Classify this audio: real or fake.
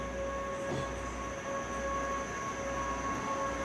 real